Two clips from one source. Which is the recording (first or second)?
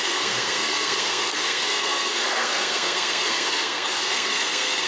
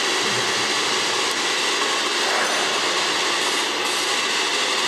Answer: second